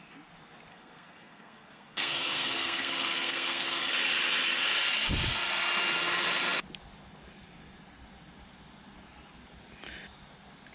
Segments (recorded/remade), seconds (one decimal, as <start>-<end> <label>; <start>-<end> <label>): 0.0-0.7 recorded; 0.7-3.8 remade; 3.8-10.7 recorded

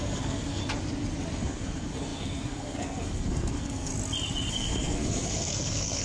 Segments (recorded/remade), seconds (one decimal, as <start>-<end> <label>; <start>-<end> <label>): 0.0-0.6 remade; 0.6-1.4 recorded; 1.4-3.9 remade; 3.9-4.5 recorded; 4.5-6.0 remade

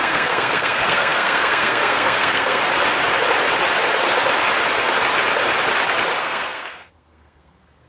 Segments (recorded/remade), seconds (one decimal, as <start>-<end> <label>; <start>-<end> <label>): 0.0-2.6 remade; 2.6-6.2 recorded; 6.2-7.9 remade